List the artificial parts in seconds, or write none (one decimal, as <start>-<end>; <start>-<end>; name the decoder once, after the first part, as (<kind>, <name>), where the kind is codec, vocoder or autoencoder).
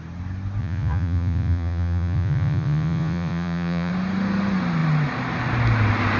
0.6-3.9 (vocoder, Vocos)